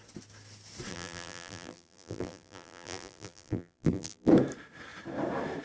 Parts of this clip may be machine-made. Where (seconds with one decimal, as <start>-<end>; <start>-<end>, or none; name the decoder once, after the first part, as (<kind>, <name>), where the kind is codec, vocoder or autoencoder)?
0.9-4.3 (vocoder, BigVGAN v2)